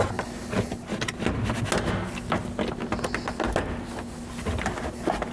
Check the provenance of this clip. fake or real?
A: real